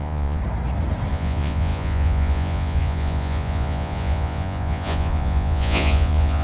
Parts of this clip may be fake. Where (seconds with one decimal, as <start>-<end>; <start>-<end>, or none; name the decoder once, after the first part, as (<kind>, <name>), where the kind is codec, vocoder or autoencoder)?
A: 0.0-0.4 (vocoder, Vocos); 1.1-6.4